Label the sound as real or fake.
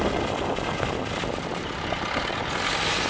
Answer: real